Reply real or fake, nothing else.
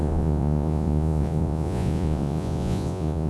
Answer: fake